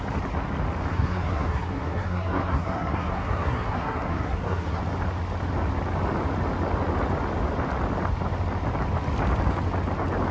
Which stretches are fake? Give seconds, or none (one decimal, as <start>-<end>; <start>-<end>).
0.9-4.8